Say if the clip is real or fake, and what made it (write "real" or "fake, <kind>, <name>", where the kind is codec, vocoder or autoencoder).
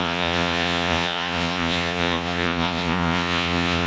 fake, vocoder, Vocos